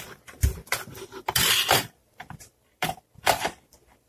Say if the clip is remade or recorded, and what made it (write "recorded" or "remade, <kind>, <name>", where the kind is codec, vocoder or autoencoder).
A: remade, vocoder, BigVGAN v2